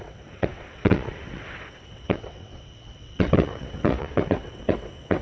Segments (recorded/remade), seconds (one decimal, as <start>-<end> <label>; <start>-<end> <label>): 0.0-5.2 remade

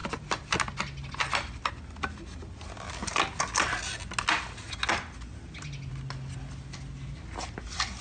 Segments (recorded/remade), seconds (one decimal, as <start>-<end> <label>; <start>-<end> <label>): 0.0-8.0 recorded

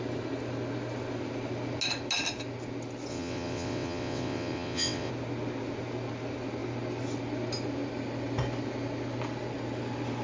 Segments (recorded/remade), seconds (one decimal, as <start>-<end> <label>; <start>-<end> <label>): 0.0-3.1 recorded; 3.1-5.1 remade; 5.1-10.2 recorded

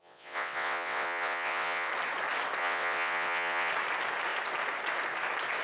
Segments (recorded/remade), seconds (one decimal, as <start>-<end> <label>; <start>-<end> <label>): 0.0-1.9 remade; 1.9-2.6 recorded; 2.6-3.7 remade; 3.7-5.6 recorded

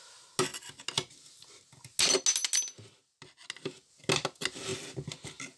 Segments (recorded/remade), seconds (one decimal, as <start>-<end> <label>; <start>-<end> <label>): 0.0-5.6 recorded

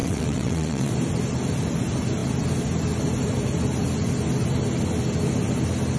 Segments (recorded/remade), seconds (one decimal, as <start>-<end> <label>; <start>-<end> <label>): 0.0-0.9 remade; 0.9-6.0 recorded

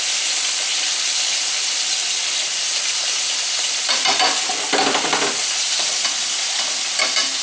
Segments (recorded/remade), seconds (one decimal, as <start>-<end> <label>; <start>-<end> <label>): 0.0-7.4 recorded